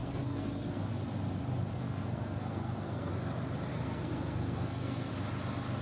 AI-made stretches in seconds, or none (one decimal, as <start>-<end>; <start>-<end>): 0.0-0.9; 1.7-3.1; 3.7-5.1

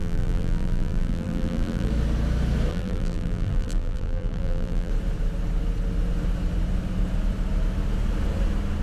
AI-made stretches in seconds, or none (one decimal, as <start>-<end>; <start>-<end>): 0.0-1.9; 2.7-4.9

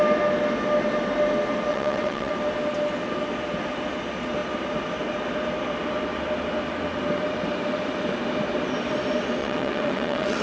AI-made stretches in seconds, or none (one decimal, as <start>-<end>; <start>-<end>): 1.7-2.3; 9.4-10.4

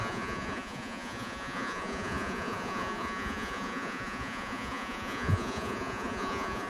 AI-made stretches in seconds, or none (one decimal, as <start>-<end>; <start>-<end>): 0.0-6.7

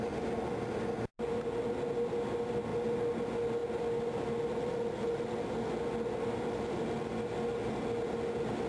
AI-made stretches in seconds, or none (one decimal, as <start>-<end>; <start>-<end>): none

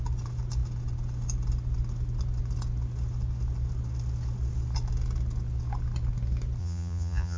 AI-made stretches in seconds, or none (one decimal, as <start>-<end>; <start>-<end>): 6.6-7.4

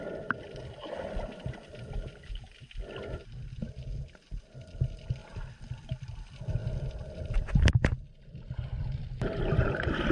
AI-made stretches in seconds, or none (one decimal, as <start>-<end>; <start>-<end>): none

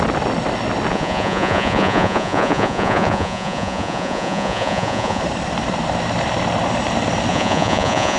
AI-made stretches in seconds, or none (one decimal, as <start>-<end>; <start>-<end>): 0.9-5.2; 7.3-8.2